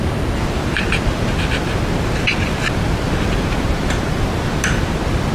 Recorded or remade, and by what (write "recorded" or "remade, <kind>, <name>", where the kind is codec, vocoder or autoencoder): recorded